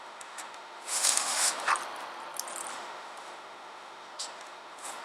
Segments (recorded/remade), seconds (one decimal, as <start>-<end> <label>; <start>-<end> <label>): 0.0-1.7 remade; 1.7-2.7 recorded; 2.7-5.0 remade